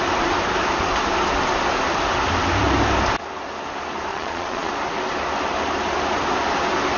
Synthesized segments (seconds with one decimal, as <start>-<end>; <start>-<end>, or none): 4.1-4.7

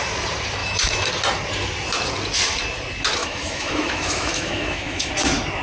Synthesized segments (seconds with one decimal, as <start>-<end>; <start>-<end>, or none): 0.6-1.1; 3.2-5.1

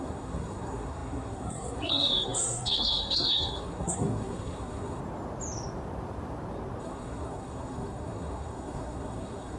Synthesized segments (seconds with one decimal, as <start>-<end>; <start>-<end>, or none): 0.0-5.0; 6.8-9.6